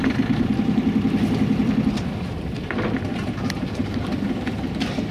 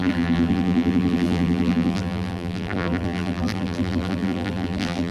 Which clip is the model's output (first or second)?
second